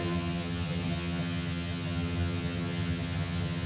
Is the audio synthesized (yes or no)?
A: yes